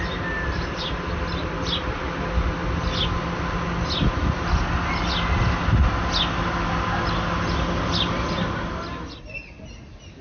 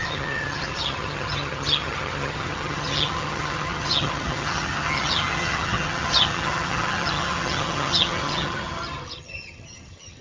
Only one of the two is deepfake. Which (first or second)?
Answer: second